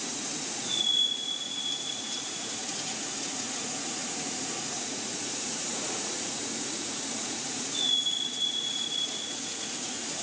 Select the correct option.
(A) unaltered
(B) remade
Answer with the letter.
B